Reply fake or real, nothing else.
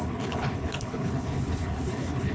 fake